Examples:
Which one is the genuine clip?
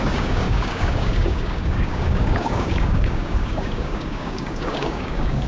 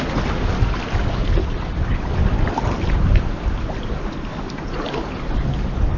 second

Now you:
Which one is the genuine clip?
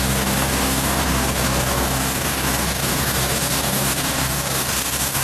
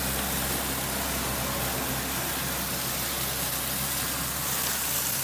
second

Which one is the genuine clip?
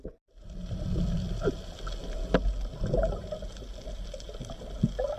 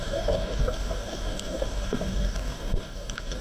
first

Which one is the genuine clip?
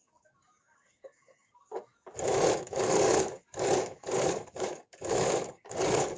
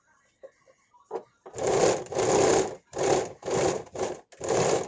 second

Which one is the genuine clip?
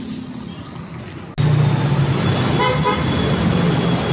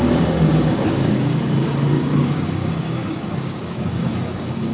first